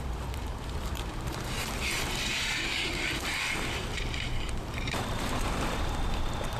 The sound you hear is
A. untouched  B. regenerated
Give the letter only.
B